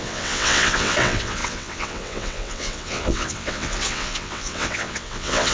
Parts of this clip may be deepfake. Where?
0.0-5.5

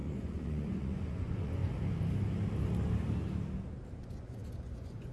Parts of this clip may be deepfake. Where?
0.0-1.6; 4.0-5.1

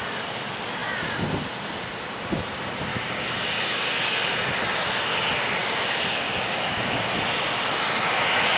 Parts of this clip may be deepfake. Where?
2.9-4.3; 5.6-7.0

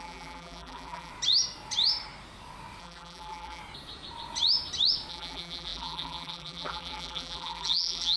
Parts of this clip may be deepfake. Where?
0.0-1.1; 2.8-3.6; 5.1-8.2

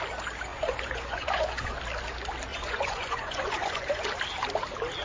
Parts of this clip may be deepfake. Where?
0.5-1.8; 2.5-4.1

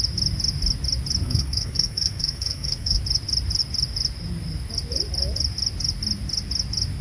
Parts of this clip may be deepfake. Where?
1.2-3.0

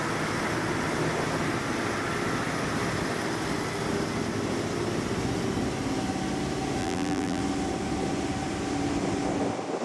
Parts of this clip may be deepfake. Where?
6.8-7.4

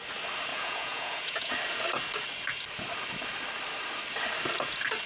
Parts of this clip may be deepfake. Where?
0.5-1.5